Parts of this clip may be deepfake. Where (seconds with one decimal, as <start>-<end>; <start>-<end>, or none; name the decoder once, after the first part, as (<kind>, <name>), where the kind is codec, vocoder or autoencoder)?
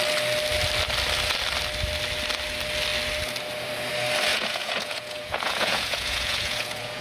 4.3-7.0 (vocoder, Vocos)